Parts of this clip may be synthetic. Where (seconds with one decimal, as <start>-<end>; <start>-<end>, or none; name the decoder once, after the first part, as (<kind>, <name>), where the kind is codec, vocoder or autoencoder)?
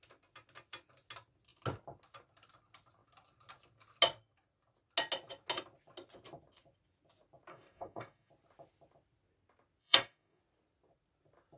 7.5-8.3 (codec, DAC); 9.8-10.4